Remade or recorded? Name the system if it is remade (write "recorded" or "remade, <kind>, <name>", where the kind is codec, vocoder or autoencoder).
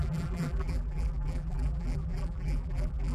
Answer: remade, vocoder, BigVGAN v2